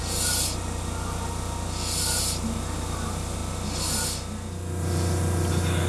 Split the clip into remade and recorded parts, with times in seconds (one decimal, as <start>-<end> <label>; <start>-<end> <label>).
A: 0.0-2.2 recorded; 2.2-3.4 remade; 3.4-5.9 recorded